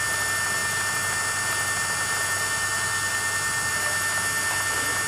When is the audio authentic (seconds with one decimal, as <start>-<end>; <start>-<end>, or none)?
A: 0.0-5.1